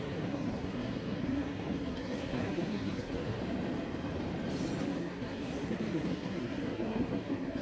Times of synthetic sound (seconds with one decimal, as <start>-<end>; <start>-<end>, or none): 0.0-3.4; 4.8-7.6

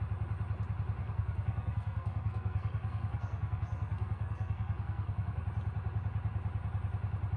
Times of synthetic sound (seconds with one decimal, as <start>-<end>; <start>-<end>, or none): 1.0-5.4